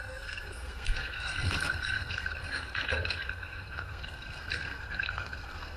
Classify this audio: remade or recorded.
remade